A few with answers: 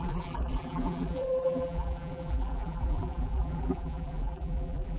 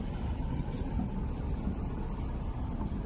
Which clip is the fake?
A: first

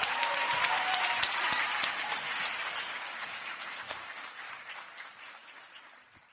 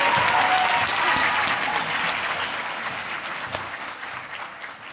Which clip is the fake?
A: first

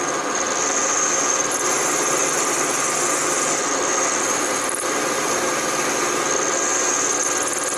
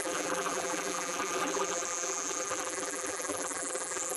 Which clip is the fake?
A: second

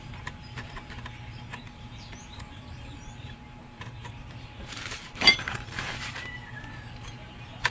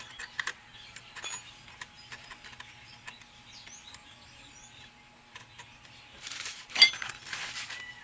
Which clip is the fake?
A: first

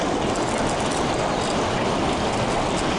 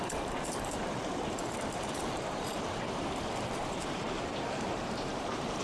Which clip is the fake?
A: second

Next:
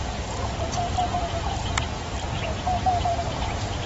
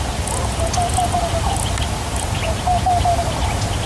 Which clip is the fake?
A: first